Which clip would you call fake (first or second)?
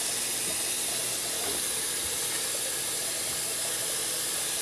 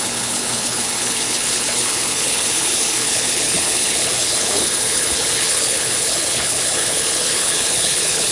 second